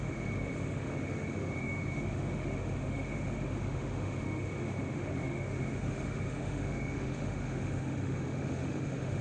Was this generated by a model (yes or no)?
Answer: yes